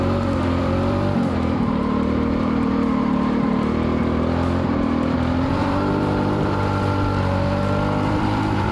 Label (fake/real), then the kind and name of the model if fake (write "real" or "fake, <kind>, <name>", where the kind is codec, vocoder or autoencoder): fake, vocoder, BigVGAN v2